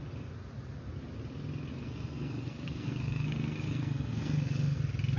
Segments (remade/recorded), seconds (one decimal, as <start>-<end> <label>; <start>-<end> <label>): 0.0-1.7 recorded; 1.7-4.8 remade; 4.8-5.2 recorded